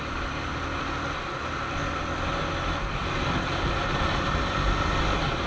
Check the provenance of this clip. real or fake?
real